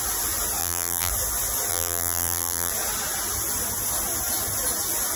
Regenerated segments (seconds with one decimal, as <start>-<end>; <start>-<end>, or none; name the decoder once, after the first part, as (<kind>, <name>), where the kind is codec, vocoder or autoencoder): 0.6-1.1 (vocoder, BigVGAN v2); 1.7-2.7